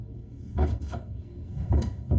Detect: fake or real fake